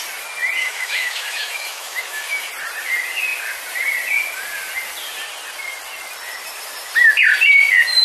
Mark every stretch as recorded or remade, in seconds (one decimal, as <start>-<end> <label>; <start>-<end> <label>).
0.0-0.6 recorded; 0.6-2.5 remade; 2.5-8.0 recorded

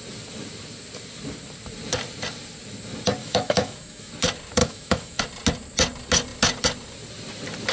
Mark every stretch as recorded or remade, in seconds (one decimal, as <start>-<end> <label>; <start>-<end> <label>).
0.0-3.2 recorded; 3.2-4.1 remade; 4.1-4.6 recorded; 4.6-5.2 remade; 5.2-7.7 recorded

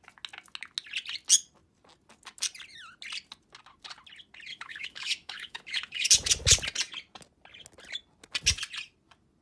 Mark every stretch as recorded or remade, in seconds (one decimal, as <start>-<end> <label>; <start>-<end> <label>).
0.0-4.5 recorded; 4.5-6.1 remade; 6.1-9.4 recorded

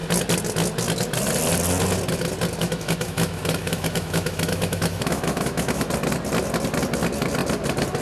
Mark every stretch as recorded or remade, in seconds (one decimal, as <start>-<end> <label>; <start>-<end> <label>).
0.0-2.6 recorded; 2.6-5.9 remade; 5.9-8.0 recorded